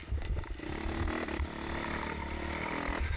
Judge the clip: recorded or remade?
recorded